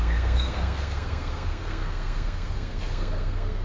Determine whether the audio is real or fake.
fake